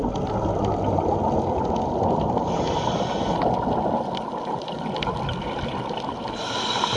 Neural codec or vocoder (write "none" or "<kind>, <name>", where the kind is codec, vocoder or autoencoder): none